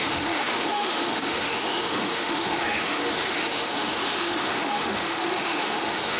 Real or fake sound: fake